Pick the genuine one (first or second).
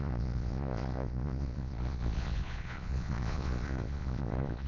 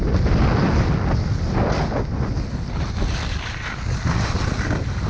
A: second